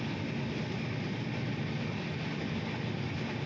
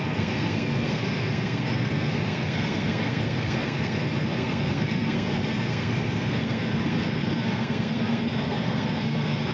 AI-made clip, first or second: second